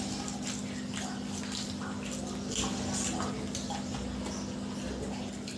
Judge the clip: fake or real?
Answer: real